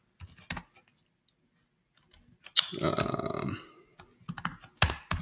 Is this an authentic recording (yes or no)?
yes